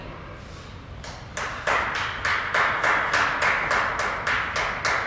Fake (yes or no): no